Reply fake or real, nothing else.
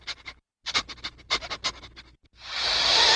real